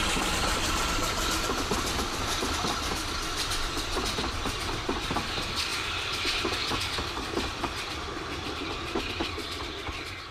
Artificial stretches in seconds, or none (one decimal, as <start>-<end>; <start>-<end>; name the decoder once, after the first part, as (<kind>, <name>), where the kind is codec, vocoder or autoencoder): none